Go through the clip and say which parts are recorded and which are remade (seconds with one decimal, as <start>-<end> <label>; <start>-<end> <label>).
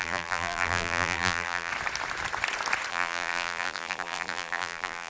0.0-1.7 remade; 1.7-2.9 recorded; 2.9-5.1 remade